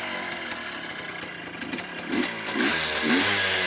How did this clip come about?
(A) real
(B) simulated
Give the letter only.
A